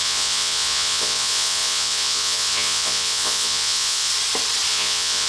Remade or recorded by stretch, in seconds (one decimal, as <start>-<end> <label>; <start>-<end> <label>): 0.0-4.1 remade; 4.1-4.7 recorded; 4.7-5.3 remade